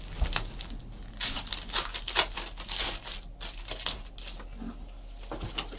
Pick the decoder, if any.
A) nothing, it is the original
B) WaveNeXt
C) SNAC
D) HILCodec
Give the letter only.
A